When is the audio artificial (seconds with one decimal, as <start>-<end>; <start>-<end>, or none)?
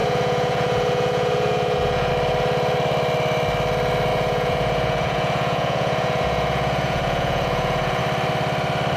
0.0-2.1; 4.1-8.0